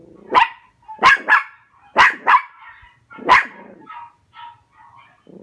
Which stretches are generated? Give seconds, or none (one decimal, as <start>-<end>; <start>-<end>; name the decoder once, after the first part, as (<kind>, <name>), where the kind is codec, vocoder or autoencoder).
none